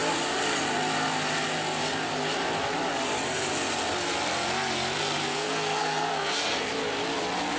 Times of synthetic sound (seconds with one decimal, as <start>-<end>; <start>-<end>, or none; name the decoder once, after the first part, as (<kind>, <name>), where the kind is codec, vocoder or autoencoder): 5.2-6.7 (codec, SNAC)